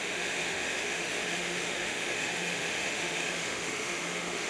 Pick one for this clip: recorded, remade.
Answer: remade